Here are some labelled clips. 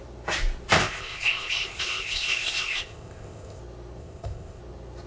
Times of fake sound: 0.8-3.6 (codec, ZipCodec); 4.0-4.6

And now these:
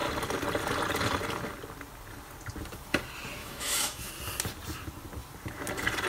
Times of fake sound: 3.4-4.1 (autoencoder, DAC-VAE)